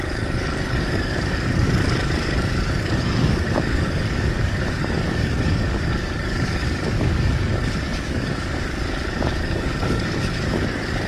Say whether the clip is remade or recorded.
remade